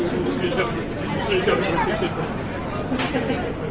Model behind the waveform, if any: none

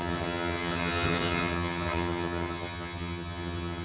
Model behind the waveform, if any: vocoder, HiFi-GAN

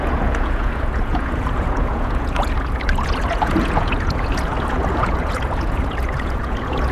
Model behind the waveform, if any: vocoder, Vocos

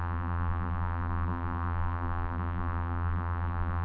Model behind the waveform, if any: vocoder, BigVGAN v2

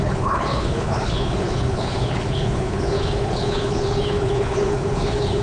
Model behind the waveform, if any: codec, HILCodec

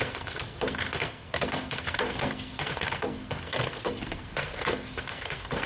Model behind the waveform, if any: codec, SNAC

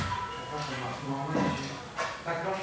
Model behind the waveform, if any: none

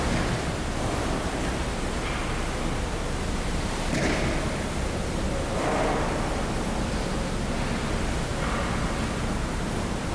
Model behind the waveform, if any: none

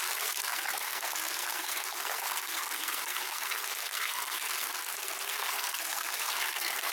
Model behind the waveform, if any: codec, SNAC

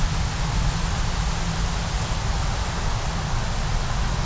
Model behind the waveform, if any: none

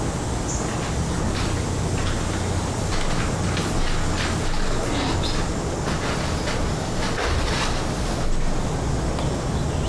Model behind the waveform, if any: none